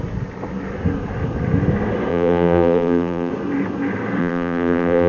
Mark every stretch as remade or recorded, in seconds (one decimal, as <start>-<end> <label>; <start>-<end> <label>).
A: 0.0-2.1 recorded; 2.1-3.3 remade; 3.3-4.2 recorded; 4.2-5.1 remade